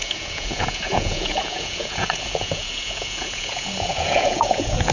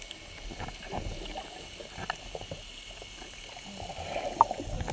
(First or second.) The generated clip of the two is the first